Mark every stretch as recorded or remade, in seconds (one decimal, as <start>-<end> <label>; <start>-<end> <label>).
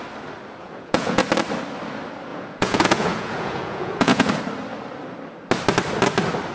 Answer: 0.0-0.6 recorded; 0.6-1.2 remade; 1.2-2.3 recorded; 2.3-4.3 remade; 4.3-6.5 recorded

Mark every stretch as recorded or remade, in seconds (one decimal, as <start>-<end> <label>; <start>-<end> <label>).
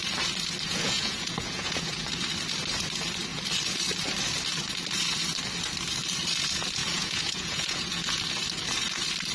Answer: 0.0-0.7 recorded; 0.7-2.1 remade; 2.1-6.8 recorded; 6.8-8.2 remade; 8.2-9.3 recorded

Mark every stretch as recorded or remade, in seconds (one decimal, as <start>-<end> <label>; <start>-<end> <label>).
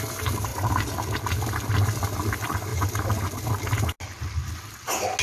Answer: 0.0-5.2 recorded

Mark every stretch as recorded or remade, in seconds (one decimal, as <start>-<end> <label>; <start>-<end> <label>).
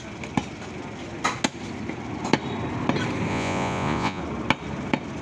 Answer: 0.0-3.3 recorded; 3.3-4.2 remade; 4.2-5.2 recorded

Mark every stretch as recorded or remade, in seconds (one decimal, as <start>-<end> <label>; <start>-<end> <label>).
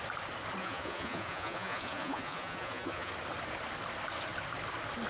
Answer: 0.0-0.6 recorded; 0.6-3.1 remade; 3.1-5.1 recorded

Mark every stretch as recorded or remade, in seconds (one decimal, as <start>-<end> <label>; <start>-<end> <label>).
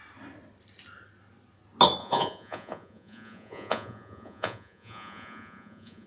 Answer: 0.0-2.0 recorded; 2.0-6.1 remade